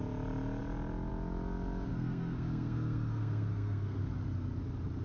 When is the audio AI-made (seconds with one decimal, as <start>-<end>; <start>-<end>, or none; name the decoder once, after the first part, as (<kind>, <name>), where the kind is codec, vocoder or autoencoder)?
1.9-4.0 (codec, SNAC)